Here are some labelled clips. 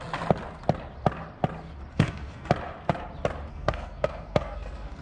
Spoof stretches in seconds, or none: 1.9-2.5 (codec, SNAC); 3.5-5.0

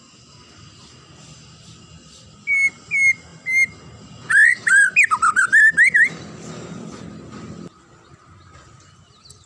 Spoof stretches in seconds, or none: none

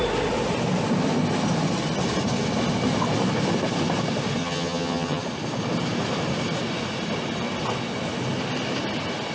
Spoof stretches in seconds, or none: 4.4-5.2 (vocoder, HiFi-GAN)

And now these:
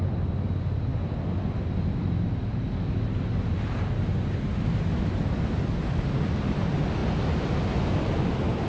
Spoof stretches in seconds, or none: none